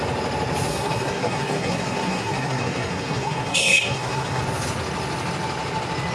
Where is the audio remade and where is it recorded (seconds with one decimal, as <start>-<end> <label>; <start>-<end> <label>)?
0.0-0.7 recorded; 0.7-4.4 remade; 4.4-6.1 recorded

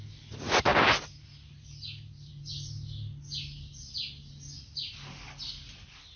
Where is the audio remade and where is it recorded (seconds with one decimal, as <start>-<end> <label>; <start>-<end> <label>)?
0.0-6.2 recorded

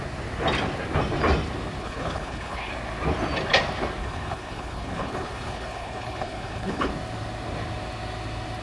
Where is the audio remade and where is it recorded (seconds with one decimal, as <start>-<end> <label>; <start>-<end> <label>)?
0.0-1.8 recorded; 1.8-2.7 remade; 2.7-4.0 recorded; 4.0-6.9 remade; 6.9-8.6 recorded

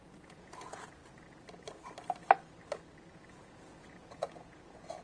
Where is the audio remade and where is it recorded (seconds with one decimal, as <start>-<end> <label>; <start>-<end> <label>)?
0.0-1.0 remade; 1.0-3.1 recorded; 3.1-5.0 remade

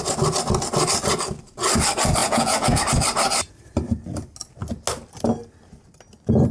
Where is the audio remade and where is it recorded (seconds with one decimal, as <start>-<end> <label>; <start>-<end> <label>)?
0.0-2.2 recorded; 2.2-2.8 remade; 2.8-6.5 recorded